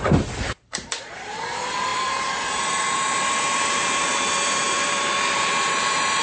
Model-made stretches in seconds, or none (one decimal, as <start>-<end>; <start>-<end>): 0.0-6.2